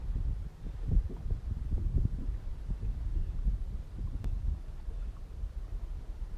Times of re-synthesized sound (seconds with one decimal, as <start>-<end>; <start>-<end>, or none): none